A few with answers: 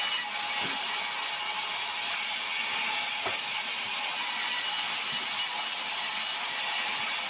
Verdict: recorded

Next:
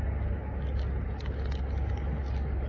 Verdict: recorded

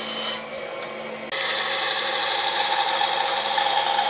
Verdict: recorded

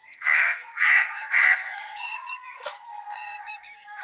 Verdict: remade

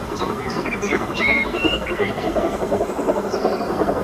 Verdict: remade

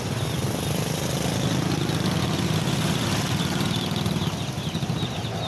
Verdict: recorded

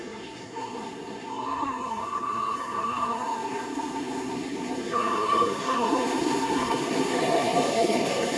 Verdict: remade